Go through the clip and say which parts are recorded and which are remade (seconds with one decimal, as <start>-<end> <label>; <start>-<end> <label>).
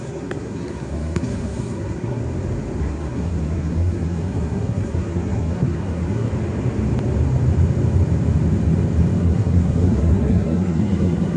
0.0-2.2 remade; 2.2-2.8 recorded; 2.8-6.3 remade; 6.3-9.2 recorded; 9.2-11.4 remade